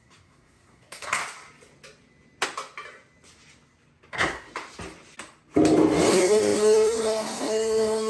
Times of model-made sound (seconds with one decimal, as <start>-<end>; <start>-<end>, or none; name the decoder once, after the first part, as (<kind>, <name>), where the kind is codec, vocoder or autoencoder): 0.0-1.2 (codec, SNAC); 4.1-4.5; 6.1-8.1